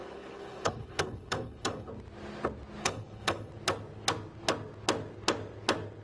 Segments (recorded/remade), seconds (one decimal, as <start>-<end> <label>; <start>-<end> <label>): 0.0-1.9 remade; 1.9-2.8 recorded; 2.8-3.5 remade; 3.5-6.0 recorded